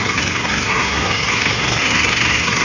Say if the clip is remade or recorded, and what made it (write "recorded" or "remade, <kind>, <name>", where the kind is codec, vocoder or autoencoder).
remade, codec, SNAC